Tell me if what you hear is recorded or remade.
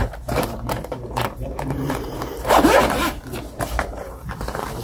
remade